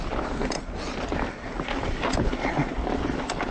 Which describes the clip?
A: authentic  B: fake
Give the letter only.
A